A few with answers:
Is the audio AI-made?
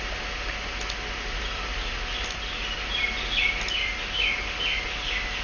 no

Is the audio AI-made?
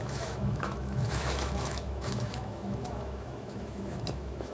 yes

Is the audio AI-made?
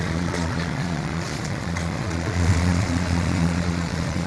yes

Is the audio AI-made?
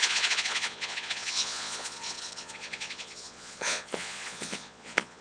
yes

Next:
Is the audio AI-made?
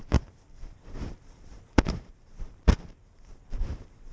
yes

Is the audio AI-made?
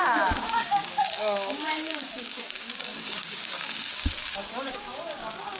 yes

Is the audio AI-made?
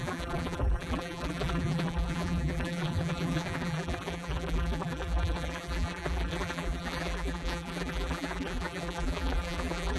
yes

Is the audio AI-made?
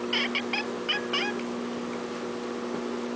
no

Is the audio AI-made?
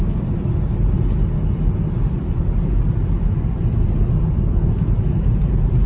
no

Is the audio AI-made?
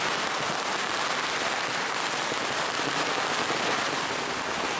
no